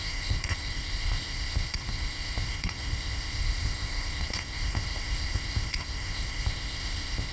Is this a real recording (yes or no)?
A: no